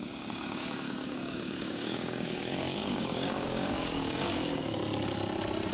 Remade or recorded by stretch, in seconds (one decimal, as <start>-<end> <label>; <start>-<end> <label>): 0.0-4.8 remade; 4.8-5.7 recorded